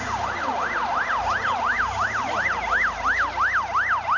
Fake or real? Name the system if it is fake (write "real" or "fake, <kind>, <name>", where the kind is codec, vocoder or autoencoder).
real